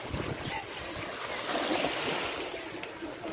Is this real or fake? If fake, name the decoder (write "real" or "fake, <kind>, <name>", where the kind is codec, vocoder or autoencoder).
real